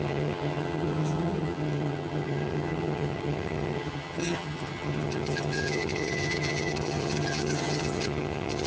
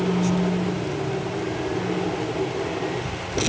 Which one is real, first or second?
second